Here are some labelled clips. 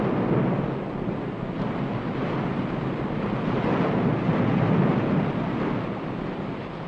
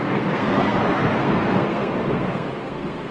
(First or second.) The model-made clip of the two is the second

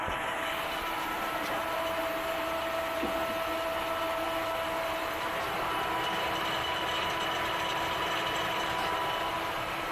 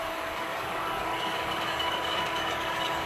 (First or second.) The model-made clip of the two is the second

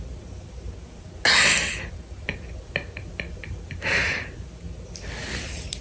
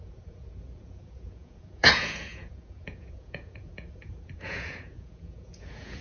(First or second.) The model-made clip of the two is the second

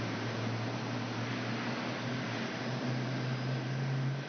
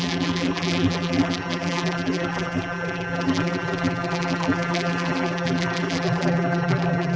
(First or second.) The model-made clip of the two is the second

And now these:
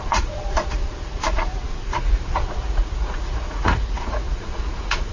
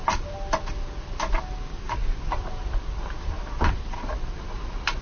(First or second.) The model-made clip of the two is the first